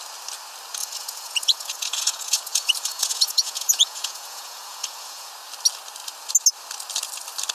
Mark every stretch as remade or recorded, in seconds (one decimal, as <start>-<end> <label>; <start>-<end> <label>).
0.0-0.8 recorded; 0.8-5.3 remade; 5.3-7.5 recorded